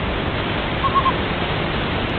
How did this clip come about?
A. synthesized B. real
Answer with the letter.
B